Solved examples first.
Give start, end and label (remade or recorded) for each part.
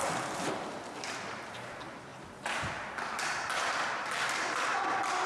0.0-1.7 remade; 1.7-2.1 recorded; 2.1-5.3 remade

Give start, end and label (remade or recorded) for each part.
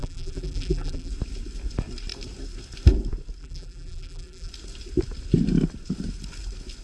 0.0-1.1 remade; 1.1-3.4 recorded; 3.4-4.5 remade; 4.5-6.8 recorded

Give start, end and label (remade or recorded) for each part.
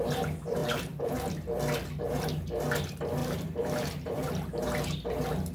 0.0-0.6 recorded; 0.6-1.3 remade; 1.3-3.2 recorded; 3.2-4.3 remade; 4.3-5.5 recorded